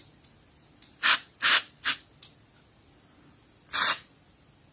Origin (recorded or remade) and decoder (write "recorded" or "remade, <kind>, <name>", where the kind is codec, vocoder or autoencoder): recorded